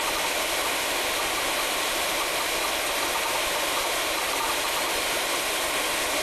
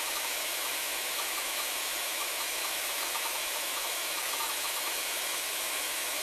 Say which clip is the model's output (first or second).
second